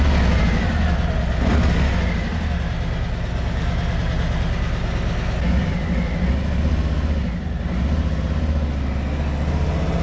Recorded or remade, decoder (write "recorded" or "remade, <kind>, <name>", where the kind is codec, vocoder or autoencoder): recorded